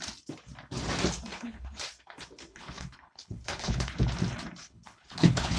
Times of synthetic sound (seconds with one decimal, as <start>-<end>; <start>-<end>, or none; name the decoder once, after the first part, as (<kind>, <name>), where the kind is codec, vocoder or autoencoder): 1.3-1.8 (codec, HILCodec); 2.5-3.9; 4.6-5.6